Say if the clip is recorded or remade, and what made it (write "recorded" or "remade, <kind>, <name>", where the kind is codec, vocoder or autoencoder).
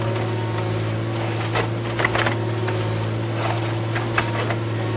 recorded